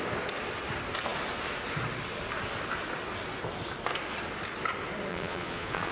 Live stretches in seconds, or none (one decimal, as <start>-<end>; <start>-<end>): 0.0-5.1